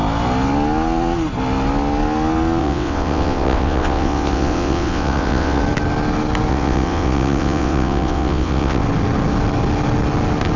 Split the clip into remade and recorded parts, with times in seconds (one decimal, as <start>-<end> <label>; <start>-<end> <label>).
0.0-2.6 recorded; 2.6-5.6 remade; 5.6-6.5 recorded; 6.5-8.8 remade; 8.8-10.6 recorded